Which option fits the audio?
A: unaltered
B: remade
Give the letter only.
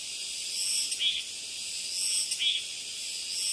A